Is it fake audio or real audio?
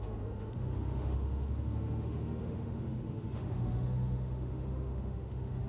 fake